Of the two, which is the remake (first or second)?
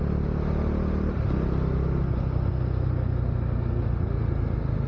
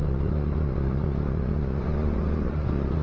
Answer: second